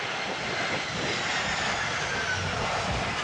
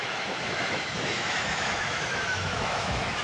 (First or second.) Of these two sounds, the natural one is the first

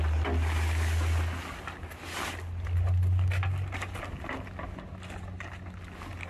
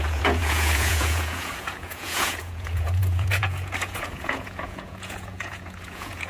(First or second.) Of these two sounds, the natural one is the first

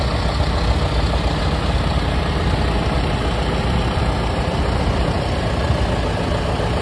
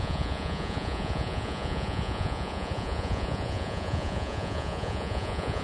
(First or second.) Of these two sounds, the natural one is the first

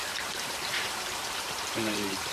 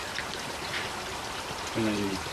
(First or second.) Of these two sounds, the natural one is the second